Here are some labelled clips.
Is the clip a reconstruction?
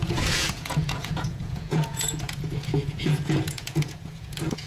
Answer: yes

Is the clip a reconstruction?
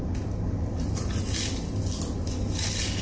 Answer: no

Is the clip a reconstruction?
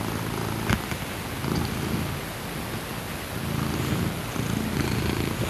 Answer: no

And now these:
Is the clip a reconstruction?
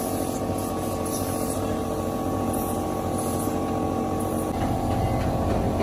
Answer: no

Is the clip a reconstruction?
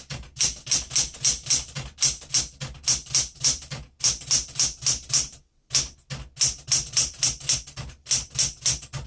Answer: no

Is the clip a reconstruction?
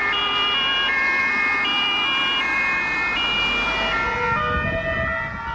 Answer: no